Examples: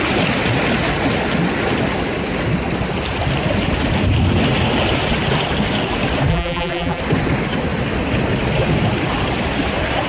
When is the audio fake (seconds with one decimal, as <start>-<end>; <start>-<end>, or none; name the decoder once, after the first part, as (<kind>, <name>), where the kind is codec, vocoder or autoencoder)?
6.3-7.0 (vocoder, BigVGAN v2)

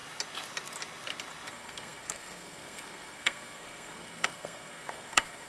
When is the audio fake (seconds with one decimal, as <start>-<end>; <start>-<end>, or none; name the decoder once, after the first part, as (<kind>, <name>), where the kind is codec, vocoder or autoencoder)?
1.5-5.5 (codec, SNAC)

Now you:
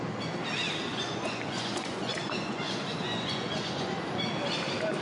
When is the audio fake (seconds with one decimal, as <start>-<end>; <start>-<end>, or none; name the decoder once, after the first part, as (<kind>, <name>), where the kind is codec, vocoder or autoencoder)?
0.9-3.9 (vocoder, Vocos)

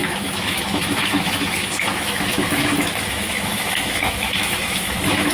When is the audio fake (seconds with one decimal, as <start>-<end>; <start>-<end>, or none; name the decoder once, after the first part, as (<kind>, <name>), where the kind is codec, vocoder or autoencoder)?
0.0-5.3 (autoencoder, DAC-VAE)

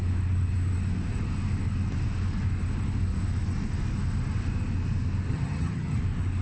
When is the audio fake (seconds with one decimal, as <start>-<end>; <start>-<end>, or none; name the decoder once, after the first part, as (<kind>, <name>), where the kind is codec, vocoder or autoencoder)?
5.3-6.0 (vocoder, HiFi-GAN)